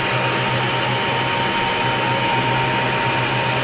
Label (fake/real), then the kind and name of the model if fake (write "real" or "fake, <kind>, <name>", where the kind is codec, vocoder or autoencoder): real